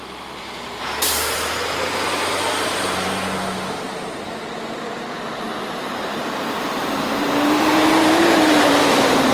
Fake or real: fake